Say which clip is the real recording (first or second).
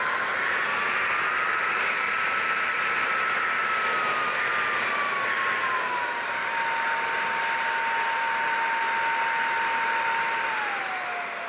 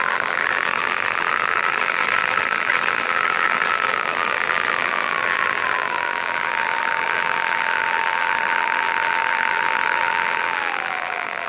first